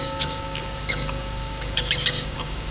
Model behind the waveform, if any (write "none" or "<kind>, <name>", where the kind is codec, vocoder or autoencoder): codec, DAC